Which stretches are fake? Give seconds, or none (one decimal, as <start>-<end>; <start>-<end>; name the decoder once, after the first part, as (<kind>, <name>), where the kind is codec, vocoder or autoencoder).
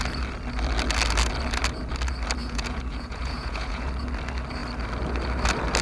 2.4-3.9 (vocoder, Vocos)